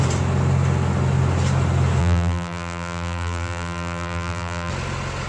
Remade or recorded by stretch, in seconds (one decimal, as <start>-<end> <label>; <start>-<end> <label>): 0.0-2.0 recorded; 2.0-4.7 remade; 4.7-5.3 recorded